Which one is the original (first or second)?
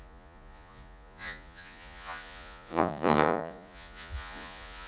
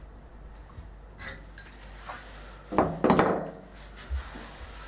second